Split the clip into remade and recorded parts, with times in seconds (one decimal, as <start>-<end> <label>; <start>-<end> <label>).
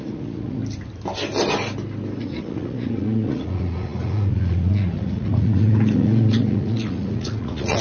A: 0.0-0.6 remade; 0.6-2.2 recorded; 2.2-7.8 remade